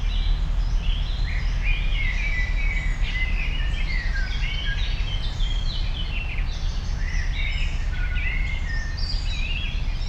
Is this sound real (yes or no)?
yes